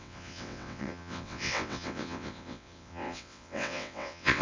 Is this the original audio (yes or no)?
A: no